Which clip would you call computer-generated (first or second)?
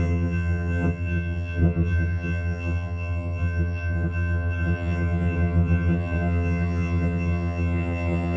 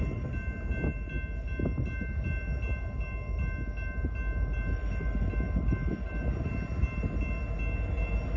first